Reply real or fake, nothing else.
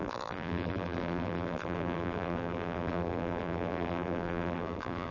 fake